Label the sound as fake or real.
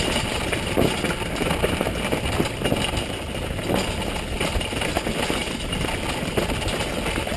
real